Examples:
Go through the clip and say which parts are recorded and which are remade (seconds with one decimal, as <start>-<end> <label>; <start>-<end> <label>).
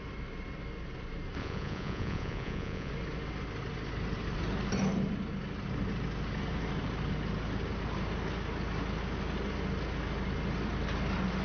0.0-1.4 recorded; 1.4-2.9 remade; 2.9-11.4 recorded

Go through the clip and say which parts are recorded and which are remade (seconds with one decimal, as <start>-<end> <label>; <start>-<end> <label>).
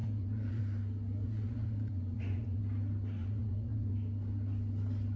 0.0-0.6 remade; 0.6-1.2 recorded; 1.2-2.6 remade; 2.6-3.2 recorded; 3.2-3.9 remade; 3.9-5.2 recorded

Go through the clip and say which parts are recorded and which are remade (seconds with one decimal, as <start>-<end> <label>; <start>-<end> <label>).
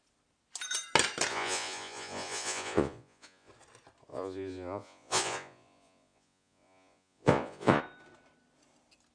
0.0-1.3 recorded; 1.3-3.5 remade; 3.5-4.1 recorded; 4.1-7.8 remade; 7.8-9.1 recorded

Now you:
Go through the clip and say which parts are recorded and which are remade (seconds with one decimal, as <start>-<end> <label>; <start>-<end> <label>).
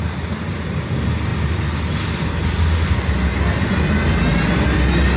0.0-5.2 recorded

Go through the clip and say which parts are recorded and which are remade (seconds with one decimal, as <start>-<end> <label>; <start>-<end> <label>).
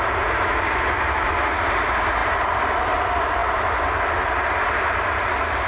0.0-5.7 recorded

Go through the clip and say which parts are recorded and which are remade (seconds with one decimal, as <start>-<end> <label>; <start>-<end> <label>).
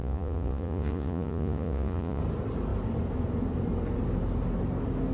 0.0-2.2 remade; 2.2-5.1 recorded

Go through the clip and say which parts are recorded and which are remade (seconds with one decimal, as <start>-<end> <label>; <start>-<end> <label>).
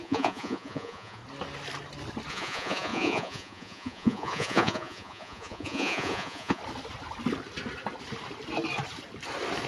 0.0-1.2 remade; 1.2-2.3 recorded; 2.3-6.6 remade; 6.6-9.7 recorded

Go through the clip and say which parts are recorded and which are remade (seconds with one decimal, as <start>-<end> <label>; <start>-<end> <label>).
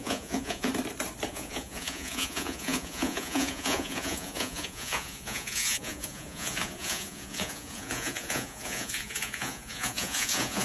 0.0-0.7 remade; 0.7-1.3 recorded; 1.3-10.6 remade